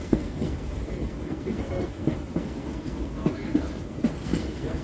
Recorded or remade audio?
remade